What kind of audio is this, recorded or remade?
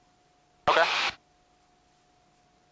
recorded